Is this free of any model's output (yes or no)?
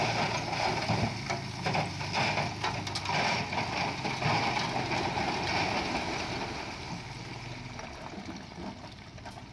yes